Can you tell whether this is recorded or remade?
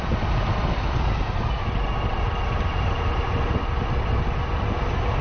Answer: recorded